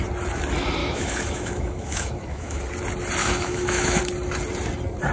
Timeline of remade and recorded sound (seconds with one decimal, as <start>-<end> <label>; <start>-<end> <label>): 0.0-0.8 recorded; 0.8-2.6 remade; 2.6-3.2 recorded; 3.2-4.0 remade; 4.0-5.1 recorded